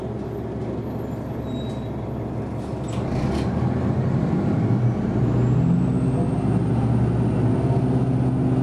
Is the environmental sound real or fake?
real